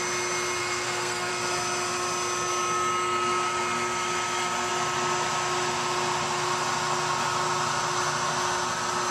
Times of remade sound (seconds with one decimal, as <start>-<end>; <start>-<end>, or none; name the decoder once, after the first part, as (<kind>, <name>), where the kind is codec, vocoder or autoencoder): 0.6-1.3 (codec, SNAC)